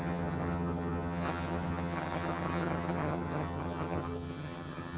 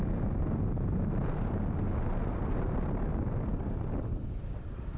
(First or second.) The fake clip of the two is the first